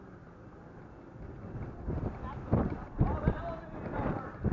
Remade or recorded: recorded